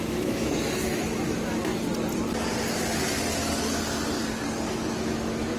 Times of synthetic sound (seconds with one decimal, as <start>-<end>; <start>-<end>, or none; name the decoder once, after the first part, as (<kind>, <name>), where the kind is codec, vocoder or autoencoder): 0.0-1.7 (autoencoder, DAC-VAE); 4.7-5.6